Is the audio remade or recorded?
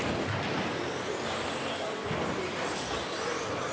recorded